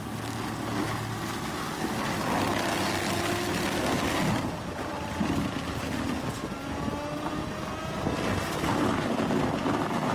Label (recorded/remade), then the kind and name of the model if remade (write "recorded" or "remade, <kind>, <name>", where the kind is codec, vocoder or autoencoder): recorded